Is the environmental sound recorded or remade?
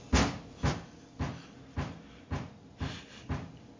recorded